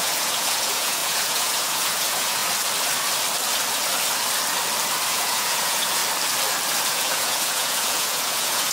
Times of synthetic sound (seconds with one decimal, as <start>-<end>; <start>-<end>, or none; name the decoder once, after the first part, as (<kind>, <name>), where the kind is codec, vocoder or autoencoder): 0.0-2.4 (vocoder, Vocos); 5.1-6.0; 6.9-8.7